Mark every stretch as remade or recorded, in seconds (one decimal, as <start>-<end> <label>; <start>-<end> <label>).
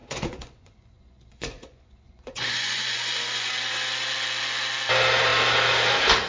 0.0-3.5 remade; 3.5-6.3 recorded